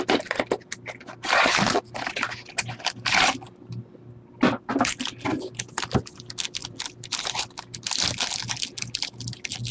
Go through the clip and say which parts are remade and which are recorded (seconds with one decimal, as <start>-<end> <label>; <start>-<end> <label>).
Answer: 0.0-6.6 recorded; 6.6-7.1 remade; 7.1-9.7 recorded